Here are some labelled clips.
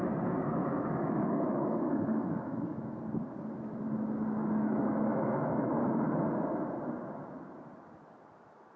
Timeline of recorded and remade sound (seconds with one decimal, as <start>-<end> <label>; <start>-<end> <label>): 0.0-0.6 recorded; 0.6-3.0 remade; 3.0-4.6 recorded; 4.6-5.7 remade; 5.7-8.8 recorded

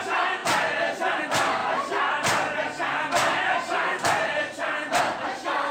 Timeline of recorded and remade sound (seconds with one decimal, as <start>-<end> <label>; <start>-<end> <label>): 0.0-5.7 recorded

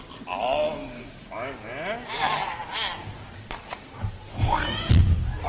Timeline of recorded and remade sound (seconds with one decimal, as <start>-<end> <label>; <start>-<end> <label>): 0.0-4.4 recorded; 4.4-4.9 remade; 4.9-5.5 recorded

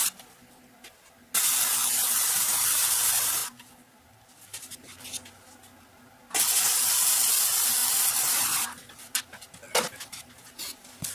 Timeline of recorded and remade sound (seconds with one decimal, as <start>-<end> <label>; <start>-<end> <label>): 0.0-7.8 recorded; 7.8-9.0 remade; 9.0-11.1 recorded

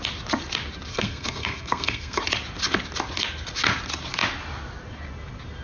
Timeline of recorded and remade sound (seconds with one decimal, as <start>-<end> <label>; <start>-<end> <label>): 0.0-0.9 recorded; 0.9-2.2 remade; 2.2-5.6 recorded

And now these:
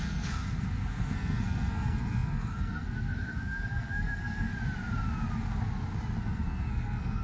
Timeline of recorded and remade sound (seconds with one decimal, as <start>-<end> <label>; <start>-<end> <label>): 0.0-4.5 remade; 4.5-6.2 recorded; 6.2-7.2 remade

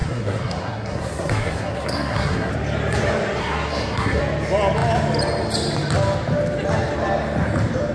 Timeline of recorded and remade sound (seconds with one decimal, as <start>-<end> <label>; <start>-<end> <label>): 0.0-2.5 remade; 2.5-3.4 recorded; 3.4-4.2 remade; 4.2-7.9 recorded

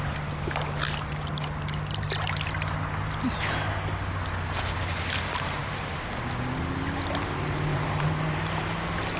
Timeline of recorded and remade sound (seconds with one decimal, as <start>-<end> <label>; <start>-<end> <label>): 0.0-7.7 recorded; 7.7-8.6 remade; 8.6-9.2 recorded